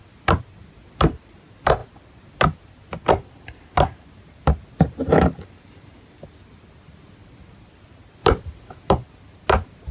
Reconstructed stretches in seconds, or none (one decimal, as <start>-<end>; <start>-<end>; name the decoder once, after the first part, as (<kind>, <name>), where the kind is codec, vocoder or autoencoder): none